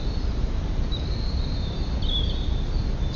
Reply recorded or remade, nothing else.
recorded